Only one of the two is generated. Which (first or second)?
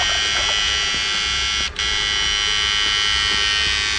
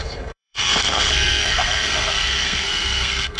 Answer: second